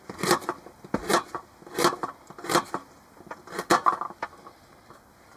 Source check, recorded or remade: recorded